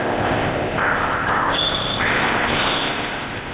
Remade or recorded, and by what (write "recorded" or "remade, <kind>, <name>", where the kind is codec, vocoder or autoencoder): remade, codec, ZipCodec